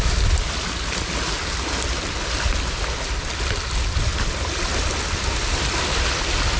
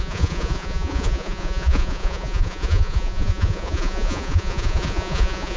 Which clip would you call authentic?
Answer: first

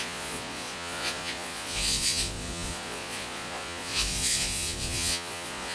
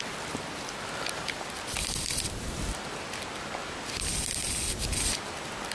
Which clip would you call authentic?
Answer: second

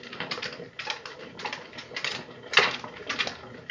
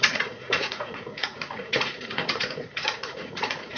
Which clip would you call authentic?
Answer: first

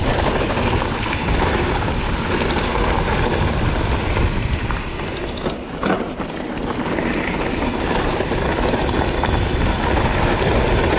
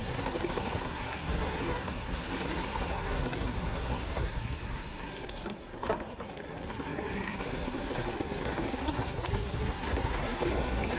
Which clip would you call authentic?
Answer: first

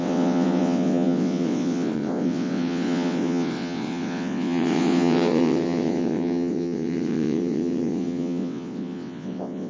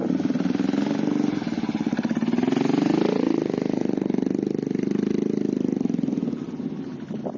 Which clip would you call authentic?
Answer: second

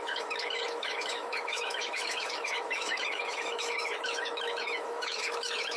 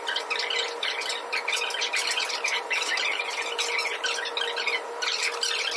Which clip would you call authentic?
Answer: second